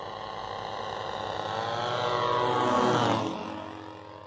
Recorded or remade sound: recorded